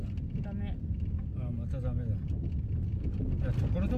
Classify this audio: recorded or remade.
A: recorded